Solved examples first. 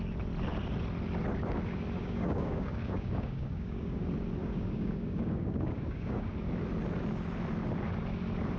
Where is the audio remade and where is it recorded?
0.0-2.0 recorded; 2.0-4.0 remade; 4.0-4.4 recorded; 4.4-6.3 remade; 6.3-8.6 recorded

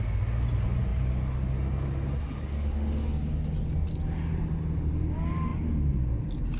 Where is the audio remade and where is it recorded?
0.0-6.6 recorded

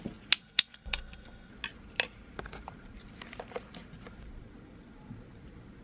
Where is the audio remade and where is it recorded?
0.0-0.4 recorded; 0.4-1.5 remade; 1.5-5.8 recorded

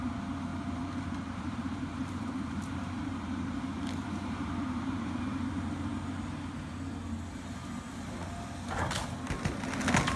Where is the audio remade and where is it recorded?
0.0-0.5 recorded; 0.5-5.4 remade; 5.4-10.2 recorded

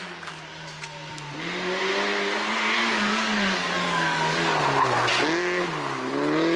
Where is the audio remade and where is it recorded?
0.0-2.8 recorded; 2.8-4.6 remade; 4.6-6.6 recorded

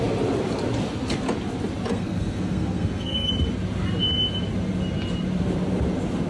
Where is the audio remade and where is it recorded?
0.0-1.9 recorded; 1.9-3.3 remade; 3.3-6.3 recorded

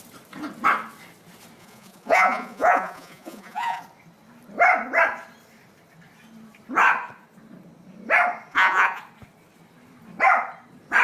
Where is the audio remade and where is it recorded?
0.0-1.6 recorded; 1.6-3.8 remade; 3.8-8.5 recorded; 8.5-9.0 remade; 9.0-11.0 recorded

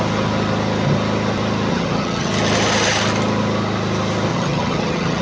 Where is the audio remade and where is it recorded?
0.0-1.7 recorded; 1.7-2.3 remade; 2.3-4.3 recorded; 4.3-5.2 remade